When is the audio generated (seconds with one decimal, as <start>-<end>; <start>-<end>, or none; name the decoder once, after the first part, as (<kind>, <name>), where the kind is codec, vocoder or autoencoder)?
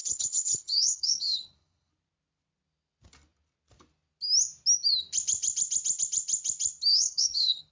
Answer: 0.0-1.9 (codec, HILCodec); 6.9-7.7